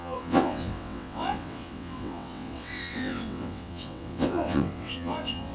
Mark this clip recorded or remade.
remade